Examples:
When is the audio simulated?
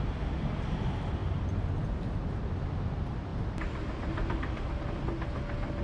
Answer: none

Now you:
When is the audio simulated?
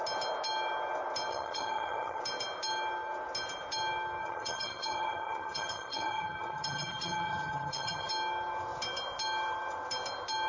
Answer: 1.3-2.2 (vocoder, HiFi-GAN); 4.2-8.1